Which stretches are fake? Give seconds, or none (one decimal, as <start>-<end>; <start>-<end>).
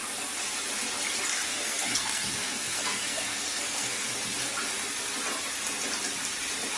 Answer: 1.5-4.1